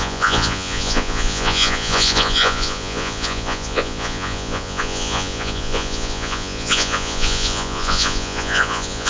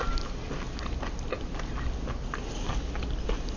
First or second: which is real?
second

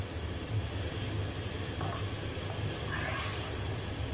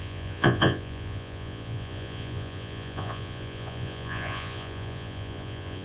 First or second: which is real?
first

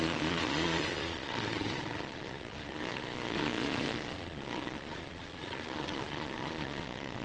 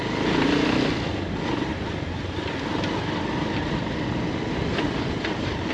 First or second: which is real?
second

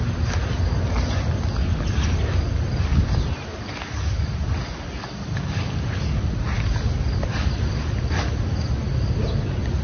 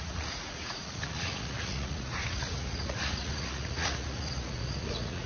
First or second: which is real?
first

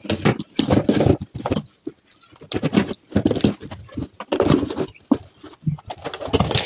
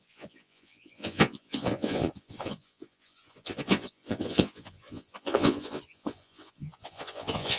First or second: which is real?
first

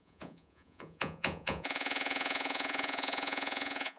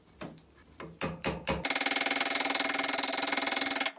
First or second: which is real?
second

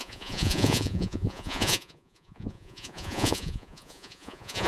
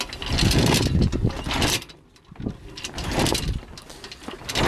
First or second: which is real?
second